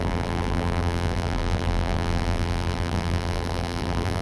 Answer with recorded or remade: remade